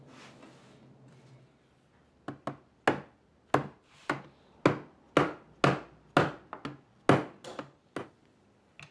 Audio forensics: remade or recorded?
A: recorded